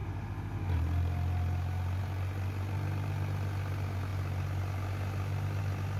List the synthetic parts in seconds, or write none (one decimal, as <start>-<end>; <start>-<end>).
none